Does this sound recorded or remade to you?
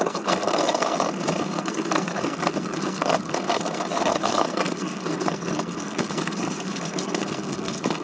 remade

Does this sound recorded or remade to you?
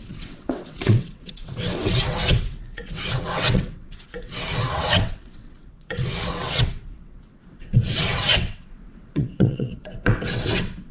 remade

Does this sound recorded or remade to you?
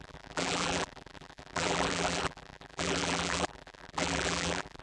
remade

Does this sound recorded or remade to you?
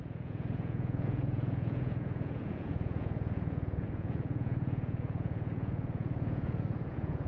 remade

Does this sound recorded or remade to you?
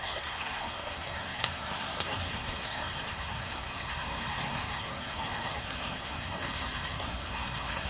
remade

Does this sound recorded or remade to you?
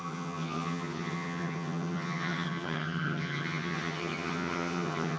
remade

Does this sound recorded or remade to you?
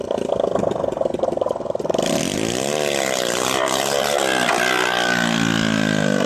recorded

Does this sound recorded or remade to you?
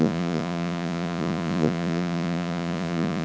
remade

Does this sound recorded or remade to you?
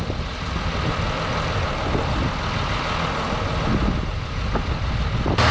recorded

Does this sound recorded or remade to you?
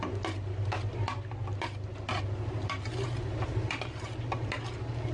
recorded